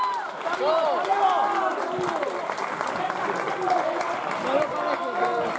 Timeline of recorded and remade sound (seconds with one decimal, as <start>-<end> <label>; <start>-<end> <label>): 0.0-5.6 recorded